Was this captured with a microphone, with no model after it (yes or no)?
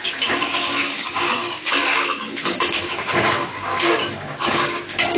no